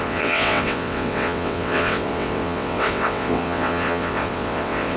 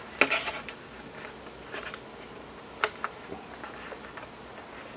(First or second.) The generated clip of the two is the first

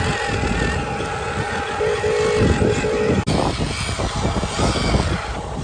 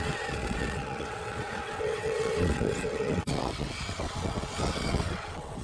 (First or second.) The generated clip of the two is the second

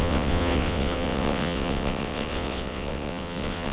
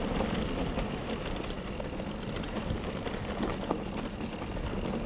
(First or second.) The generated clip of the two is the first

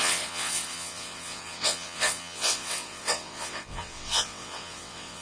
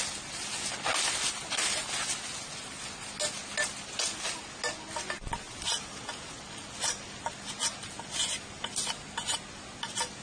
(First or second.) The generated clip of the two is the first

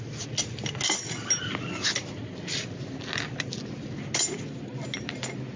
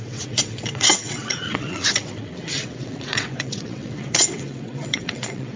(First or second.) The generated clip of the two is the second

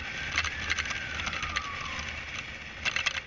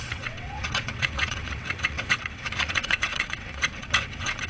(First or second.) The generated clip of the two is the second